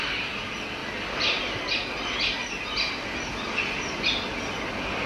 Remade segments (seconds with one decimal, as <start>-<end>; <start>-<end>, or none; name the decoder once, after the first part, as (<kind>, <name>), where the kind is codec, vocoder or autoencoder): none